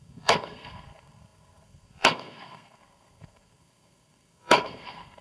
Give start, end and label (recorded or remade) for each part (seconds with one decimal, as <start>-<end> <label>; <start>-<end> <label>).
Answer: 0.0-5.2 remade